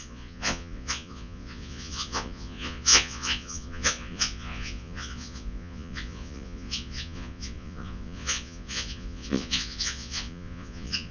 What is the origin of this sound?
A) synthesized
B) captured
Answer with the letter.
A